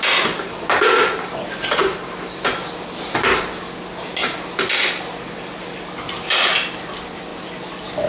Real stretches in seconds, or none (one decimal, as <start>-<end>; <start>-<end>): 0.0-8.1